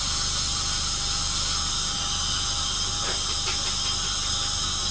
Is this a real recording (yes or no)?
no